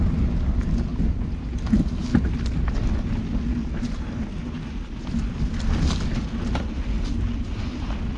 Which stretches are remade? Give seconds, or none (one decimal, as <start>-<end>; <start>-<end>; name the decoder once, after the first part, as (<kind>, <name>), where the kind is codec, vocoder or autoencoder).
none